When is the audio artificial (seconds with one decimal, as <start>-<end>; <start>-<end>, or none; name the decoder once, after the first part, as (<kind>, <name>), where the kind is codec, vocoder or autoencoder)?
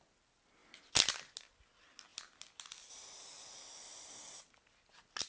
none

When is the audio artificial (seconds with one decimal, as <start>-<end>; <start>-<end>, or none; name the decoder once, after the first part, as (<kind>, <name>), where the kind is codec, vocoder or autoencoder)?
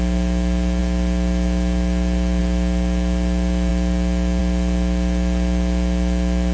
none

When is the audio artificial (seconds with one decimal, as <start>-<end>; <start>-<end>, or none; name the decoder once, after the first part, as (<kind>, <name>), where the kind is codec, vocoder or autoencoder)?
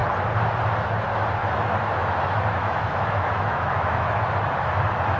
1.4-4.2 (autoencoder, DAC-VAE)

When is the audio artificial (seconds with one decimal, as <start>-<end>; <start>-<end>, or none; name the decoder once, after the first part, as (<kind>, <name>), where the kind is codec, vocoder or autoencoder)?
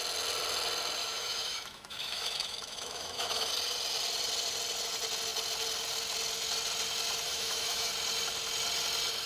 1.0-3.5 (autoencoder, DAC-VAE); 7.3-7.9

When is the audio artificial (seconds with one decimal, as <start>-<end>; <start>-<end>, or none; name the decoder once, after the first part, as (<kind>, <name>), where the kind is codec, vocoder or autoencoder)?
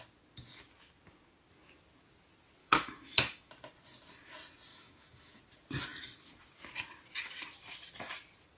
2.6-3.5 (autoencoder, DAC-VAE); 4.7-5.4